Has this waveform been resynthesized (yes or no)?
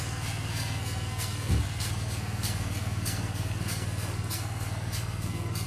yes